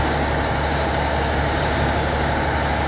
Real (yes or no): no